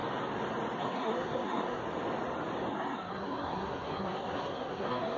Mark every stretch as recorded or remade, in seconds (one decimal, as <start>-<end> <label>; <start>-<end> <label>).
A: 0.0-0.8 recorded; 0.8-1.8 remade; 1.8-2.7 recorded; 2.7-5.2 remade